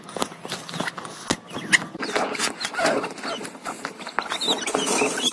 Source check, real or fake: real